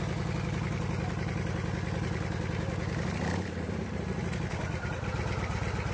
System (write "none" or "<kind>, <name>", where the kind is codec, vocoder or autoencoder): none